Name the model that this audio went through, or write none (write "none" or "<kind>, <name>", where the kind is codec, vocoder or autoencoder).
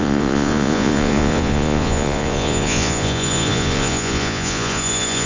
vocoder, Vocos